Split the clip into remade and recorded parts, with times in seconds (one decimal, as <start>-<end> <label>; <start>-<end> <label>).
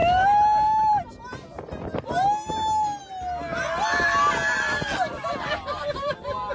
0.0-6.5 recorded